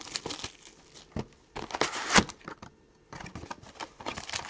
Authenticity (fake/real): real